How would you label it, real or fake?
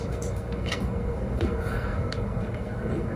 fake